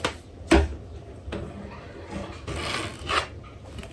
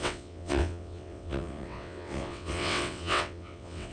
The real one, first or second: first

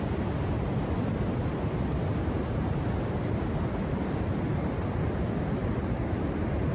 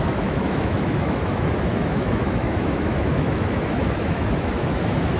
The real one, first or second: first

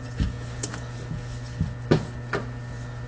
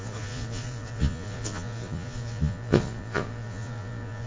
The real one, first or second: first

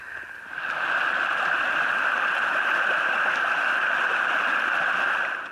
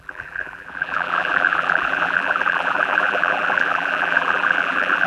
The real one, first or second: first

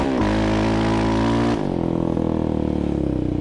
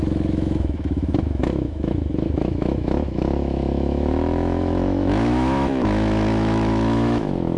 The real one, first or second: first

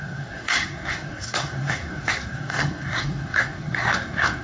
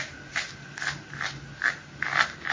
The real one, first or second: second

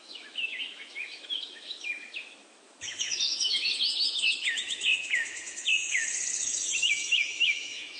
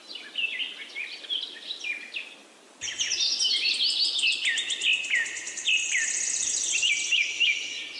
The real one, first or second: second